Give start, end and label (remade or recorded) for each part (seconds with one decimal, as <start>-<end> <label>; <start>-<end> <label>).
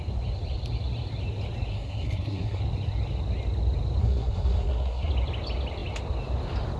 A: 0.0-1.7 recorded; 1.7-2.6 remade; 2.6-4.0 recorded; 4.0-5.1 remade; 5.1-6.8 recorded